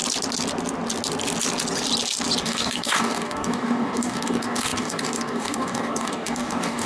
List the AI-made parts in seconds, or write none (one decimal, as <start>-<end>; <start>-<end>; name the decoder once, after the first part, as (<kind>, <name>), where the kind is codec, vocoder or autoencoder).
2.4-6.9 (codec, DAC)

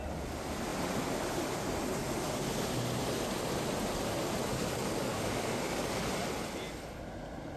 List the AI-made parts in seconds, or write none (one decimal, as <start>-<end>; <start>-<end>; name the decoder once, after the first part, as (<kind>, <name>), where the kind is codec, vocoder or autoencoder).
4.5-6.1 (codec, DAC)

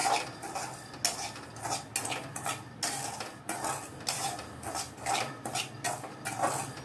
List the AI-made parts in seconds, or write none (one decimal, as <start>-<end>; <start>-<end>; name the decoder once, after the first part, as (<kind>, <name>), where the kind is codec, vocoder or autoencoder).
none

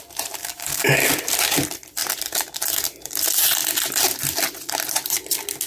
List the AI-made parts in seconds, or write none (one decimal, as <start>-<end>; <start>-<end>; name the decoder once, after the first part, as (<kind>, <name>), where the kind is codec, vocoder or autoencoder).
0.4-1.1 (codec, DAC)